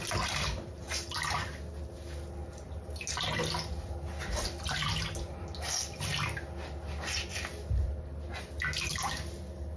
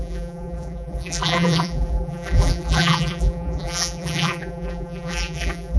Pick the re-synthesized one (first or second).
second